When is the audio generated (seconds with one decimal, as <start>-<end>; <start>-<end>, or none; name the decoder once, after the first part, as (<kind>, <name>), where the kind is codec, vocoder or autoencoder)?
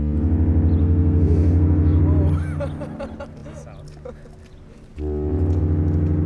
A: 0.8-2.0 (codec, SNAC)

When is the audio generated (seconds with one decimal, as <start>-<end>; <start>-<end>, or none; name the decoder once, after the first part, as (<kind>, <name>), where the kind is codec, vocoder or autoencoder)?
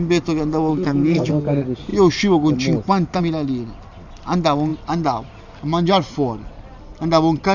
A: 0.7-1.3 (codec, SNAC)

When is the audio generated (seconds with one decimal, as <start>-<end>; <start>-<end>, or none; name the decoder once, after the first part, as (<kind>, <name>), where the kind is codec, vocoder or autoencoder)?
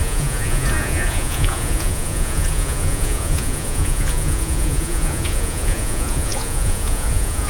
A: 0.0-7.5 (vocoder, Vocos)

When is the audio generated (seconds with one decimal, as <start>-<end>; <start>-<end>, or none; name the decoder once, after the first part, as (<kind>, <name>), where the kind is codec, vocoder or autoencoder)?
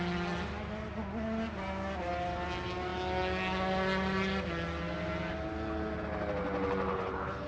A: 6.9-7.5 (codec, HILCodec)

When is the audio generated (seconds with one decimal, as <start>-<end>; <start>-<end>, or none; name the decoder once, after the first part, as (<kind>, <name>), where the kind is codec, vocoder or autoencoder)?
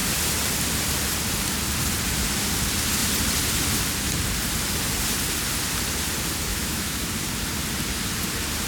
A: 6.5-7.0 (autoencoder, DAC-VAE)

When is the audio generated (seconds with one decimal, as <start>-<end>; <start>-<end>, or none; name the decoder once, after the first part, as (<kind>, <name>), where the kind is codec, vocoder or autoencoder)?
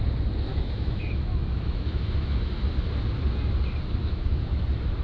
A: 0.5-2.6 (autoencoder, DAC-VAE); 4.0-4.6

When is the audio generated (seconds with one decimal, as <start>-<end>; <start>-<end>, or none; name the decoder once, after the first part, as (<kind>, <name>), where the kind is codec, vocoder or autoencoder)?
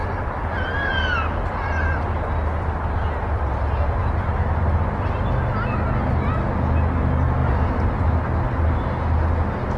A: 7.4-7.9 (vocoder, BigVGAN v2)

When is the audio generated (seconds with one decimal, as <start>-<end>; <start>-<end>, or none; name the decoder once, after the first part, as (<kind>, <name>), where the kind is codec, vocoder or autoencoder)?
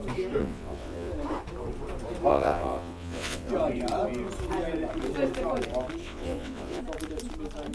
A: 0.4-1.1 (vocoder, WaveNeXt); 2.3-3.5; 6.0-6.8